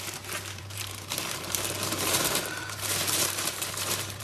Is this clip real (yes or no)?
no